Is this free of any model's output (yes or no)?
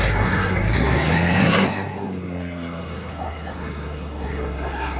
no